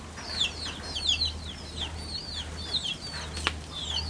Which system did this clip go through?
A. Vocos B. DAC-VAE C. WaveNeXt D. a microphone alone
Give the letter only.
D